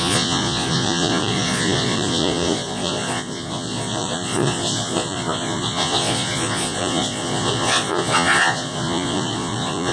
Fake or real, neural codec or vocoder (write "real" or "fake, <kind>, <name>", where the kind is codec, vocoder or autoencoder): fake, vocoder, Vocos